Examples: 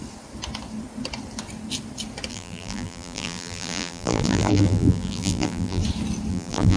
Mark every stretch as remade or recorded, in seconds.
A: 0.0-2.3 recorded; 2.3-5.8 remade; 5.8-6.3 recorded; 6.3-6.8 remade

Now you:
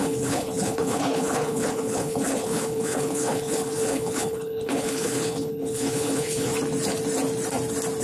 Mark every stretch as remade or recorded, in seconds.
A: 0.0-6.5 remade; 6.5-8.0 recorded

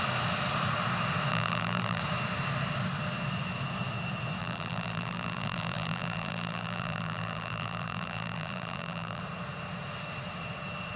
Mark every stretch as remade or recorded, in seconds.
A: 0.0-1.3 recorded; 1.3-2.0 remade; 2.0-4.4 recorded; 4.4-9.2 remade; 9.2-11.0 recorded

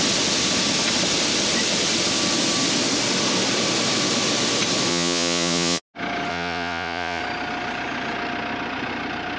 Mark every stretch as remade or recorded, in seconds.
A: 0.0-4.9 recorded; 4.9-5.8 remade; 5.8-6.3 recorded; 6.3-7.2 remade; 7.2-9.4 recorded

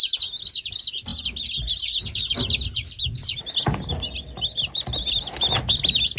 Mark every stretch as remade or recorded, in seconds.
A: 0.0-6.2 recorded

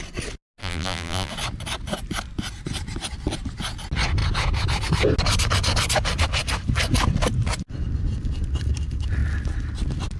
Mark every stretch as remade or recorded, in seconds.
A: 0.0-0.6 recorded; 0.6-1.3 remade; 1.3-10.2 recorded